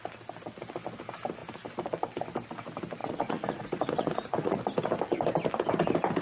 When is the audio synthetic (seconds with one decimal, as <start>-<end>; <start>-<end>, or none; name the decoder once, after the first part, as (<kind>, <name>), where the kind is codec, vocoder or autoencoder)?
3.0-4.6 (vocoder, Vocos)